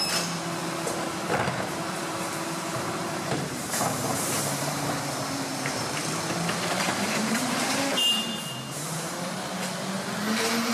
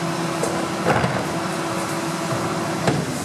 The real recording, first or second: second